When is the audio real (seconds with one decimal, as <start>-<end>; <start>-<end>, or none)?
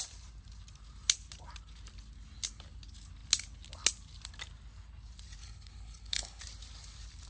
0.0-5.4; 6.4-7.3